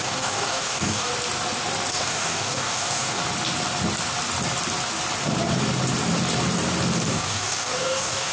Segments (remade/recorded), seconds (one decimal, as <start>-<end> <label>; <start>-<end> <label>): 0.0-1.1 remade; 1.1-1.9 recorded; 1.9-3.2 remade; 3.2-7.1 recorded; 7.1-8.3 remade